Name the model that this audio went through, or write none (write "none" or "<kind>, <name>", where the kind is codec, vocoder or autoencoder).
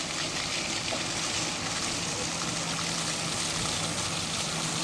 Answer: none